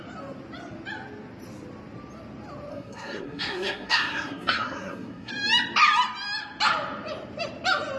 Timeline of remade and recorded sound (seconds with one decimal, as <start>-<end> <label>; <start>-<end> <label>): 0.0-2.7 recorded; 2.7-5.3 remade; 5.3-8.0 recorded